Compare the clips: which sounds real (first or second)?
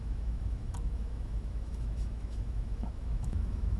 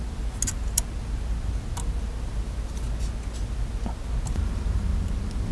second